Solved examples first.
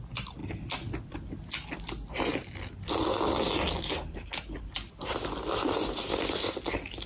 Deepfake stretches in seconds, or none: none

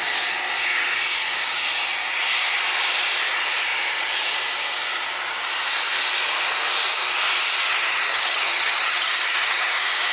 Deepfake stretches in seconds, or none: 7.7-9.7

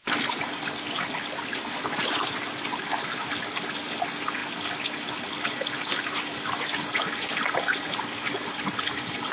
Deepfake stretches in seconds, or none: none

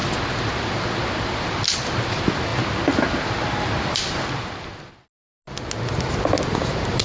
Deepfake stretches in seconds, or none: none

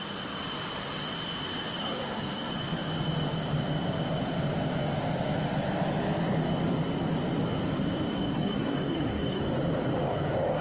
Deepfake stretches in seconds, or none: 1.8-2.5; 8.1-9.4

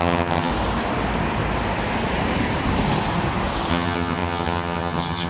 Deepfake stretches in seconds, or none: 0.0-0.5; 3.7-5.3

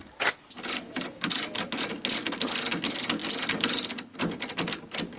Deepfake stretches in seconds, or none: none